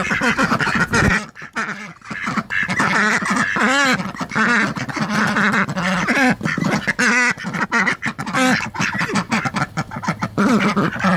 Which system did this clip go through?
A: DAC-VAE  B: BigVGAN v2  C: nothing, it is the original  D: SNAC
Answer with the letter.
C